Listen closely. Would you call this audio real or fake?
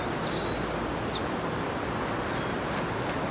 real